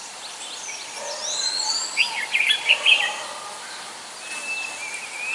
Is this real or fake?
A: real